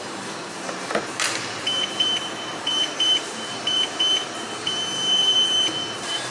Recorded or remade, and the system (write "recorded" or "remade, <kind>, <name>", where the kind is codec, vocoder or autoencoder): remade, vocoder, BigVGAN v2